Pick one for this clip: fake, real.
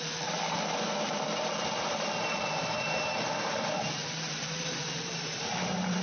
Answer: fake